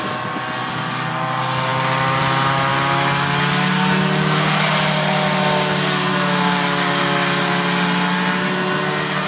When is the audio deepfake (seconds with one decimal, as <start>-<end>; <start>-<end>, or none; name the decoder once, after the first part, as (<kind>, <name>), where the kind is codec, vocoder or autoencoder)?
none